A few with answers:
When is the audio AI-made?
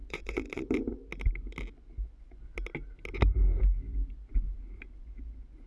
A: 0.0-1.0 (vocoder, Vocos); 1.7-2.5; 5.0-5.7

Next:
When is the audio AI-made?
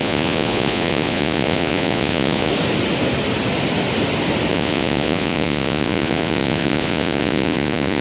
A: 0.0-2.5 (vocoder, Vocos); 4.5-8.0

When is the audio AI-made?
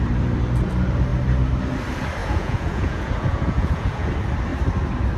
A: 2.2-4.1 (vocoder, Vocos)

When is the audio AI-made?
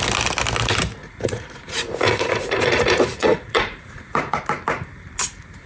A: 1.0-4.4 (vocoder, Vocos)